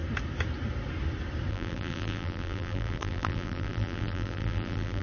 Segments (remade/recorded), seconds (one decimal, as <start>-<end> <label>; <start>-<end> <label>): 0.0-1.5 recorded; 1.5-5.0 remade